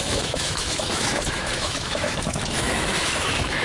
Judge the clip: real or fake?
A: fake